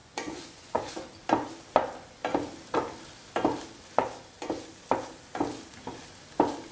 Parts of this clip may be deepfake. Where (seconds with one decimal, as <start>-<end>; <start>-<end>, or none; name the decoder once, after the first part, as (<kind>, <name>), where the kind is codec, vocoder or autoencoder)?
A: 0.0-0.9 (vocoder, Vocos)